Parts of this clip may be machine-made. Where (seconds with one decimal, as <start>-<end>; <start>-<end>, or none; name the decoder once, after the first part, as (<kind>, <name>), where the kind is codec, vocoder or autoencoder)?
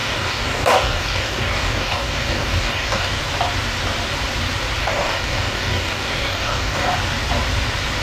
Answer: 0.0-3.2 (codec, DAC); 4.8-6.9